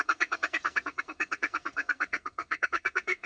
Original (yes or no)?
no